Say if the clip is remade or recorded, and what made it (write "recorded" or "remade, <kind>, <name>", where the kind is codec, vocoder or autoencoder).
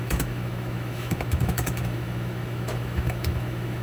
remade, autoencoder, DAC-VAE